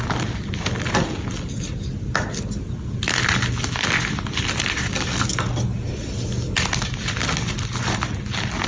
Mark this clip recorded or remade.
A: recorded